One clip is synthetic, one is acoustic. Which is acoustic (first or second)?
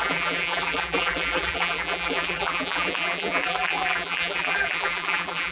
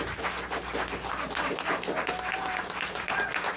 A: second